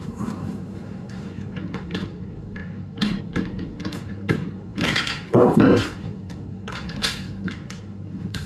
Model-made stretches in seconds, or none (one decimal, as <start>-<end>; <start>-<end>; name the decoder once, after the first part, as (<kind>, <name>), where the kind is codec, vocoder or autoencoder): 0.0-8.5 (codec, SNAC)